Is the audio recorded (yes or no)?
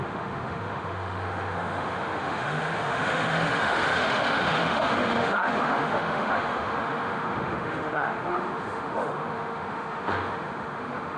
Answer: no